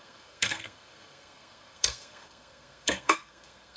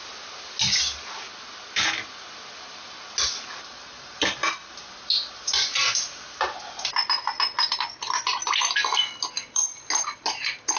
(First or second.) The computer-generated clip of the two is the first